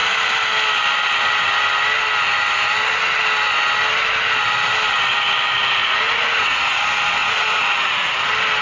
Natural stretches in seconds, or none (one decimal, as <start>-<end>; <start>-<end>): 0.0-5.8; 6.8-7.2; 8.1-8.6